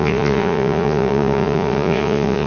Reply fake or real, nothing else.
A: fake